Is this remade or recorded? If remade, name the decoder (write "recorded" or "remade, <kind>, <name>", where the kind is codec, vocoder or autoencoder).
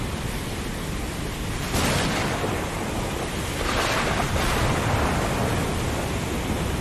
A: recorded